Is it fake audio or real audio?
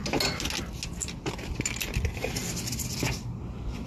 real